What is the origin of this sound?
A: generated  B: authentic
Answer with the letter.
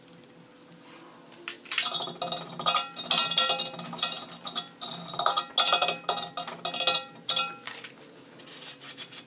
B